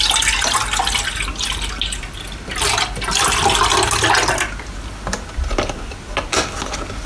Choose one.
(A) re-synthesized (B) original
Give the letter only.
B